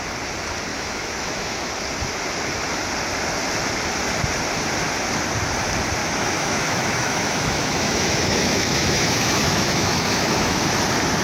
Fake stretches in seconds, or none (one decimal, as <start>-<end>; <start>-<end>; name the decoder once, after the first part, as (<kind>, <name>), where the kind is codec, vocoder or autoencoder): 0.7-1.7 (autoencoder, DAC-VAE); 6.0-10.6